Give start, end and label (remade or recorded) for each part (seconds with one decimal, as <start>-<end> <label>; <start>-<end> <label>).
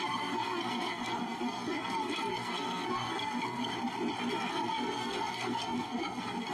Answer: 0.0-3.7 remade; 3.7-4.3 recorded; 4.3-6.5 remade